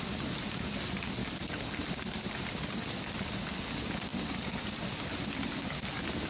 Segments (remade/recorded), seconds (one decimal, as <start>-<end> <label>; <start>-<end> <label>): 0.0-1.2 recorded; 1.2-1.8 remade; 1.8-6.3 recorded